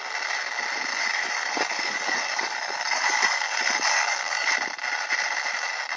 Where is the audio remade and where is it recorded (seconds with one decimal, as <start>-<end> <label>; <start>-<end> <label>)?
0.0-0.9 recorded; 0.9-4.5 remade; 4.5-6.0 recorded